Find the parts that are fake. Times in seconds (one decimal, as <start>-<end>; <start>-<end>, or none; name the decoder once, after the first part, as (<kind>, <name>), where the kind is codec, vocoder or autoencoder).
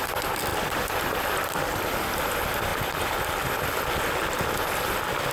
0.5-1.2 (vocoder, BigVGAN v2)